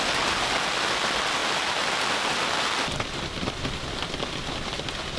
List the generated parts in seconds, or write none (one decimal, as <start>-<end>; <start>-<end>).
none